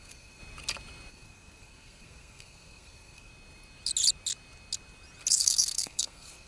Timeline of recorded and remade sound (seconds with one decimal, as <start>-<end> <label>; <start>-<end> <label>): 0.0-0.4 remade; 0.4-1.1 recorded; 1.1-3.3 remade; 3.3-5.3 recorded; 5.3-6.5 remade